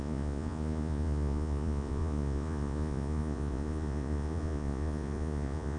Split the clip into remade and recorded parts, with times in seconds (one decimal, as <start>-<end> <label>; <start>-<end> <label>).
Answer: 0.0-5.8 remade